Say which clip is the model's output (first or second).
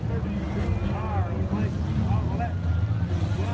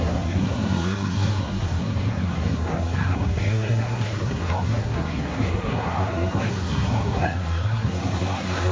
second